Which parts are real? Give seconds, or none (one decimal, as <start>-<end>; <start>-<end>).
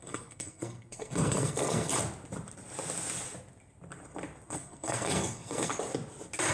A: 1.9-4.5; 5.7-6.5